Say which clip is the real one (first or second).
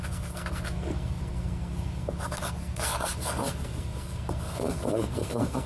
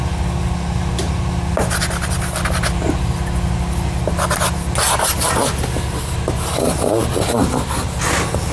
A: second